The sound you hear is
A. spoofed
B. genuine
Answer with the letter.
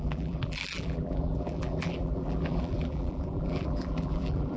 A